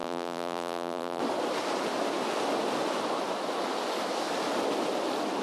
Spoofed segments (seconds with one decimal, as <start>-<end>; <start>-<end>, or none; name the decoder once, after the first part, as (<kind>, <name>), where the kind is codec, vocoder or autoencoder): 0.0-1.2 (vocoder, BigVGAN v2)